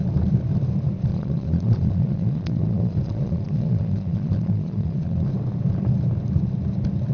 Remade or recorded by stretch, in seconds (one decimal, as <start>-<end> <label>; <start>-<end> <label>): 0.0-1.1 recorded; 1.1-5.3 remade; 5.3-7.1 recorded